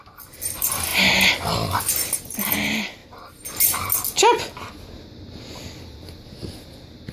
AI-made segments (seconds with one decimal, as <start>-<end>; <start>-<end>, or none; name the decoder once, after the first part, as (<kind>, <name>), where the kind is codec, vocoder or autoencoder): none